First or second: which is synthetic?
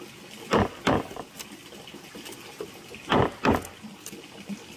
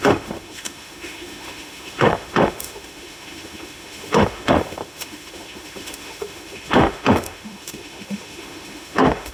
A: second